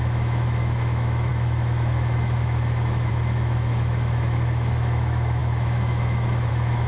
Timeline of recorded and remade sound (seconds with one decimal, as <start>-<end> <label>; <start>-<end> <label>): 0.0-6.9 remade